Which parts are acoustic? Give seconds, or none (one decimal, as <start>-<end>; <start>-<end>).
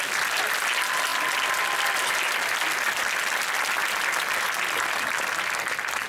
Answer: 0.0-6.1